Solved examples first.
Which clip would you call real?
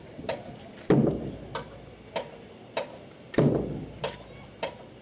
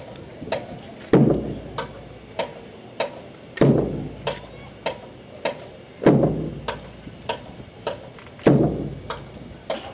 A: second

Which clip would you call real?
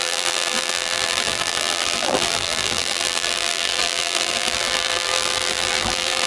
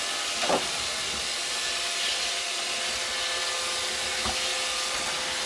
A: second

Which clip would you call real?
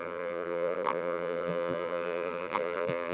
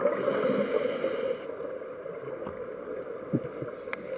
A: second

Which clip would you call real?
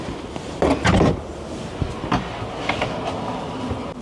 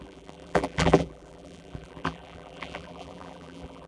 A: first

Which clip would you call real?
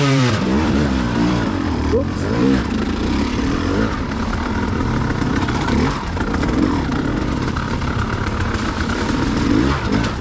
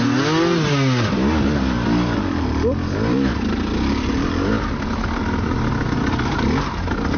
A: second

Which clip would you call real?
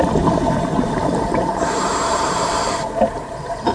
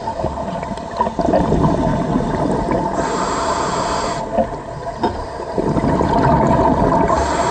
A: second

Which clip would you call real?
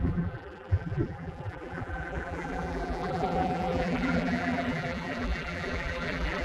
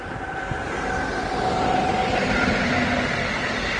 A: second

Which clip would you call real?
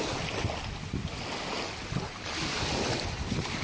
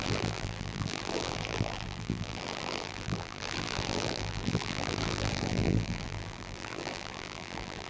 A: first